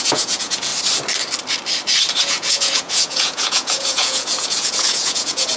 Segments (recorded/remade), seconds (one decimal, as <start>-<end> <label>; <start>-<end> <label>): 0.0-0.7 remade; 0.7-2.1 recorded; 2.1-5.6 remade